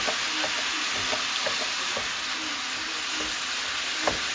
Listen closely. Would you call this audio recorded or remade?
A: recorded